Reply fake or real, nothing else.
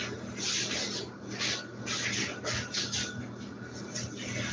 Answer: real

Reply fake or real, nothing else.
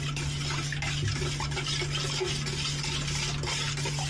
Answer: real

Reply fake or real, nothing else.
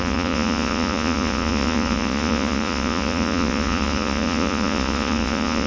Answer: fake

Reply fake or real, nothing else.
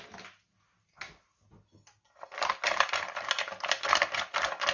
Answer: real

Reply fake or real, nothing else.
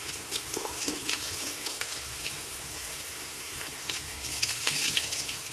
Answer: fake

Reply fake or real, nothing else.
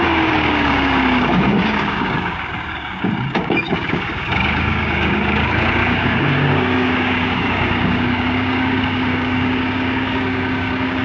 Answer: fake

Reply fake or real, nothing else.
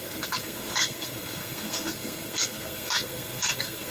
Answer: fake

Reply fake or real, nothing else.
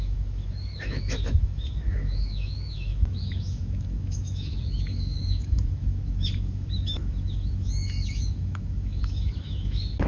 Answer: fake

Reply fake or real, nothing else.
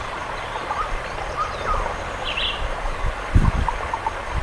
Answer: fake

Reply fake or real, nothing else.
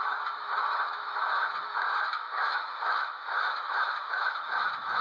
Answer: fake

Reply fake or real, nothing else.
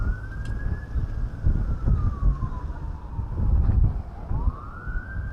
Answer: real